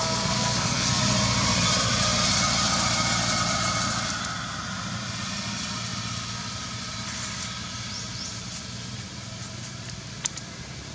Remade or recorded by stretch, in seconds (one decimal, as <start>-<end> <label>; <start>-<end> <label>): 0.0-1.0 remade; 1.0-10.9 recorded